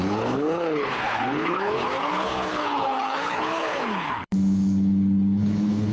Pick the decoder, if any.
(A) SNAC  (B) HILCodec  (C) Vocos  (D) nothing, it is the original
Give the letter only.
B